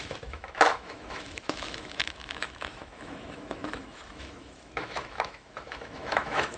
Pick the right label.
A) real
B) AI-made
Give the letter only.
B